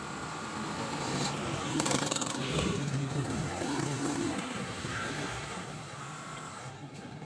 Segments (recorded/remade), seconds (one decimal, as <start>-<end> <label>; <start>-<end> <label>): 0.0-1.6 recorded; 1.6-6.0 remade; 6.0-6.5 recorded; 6.5-7.3 remade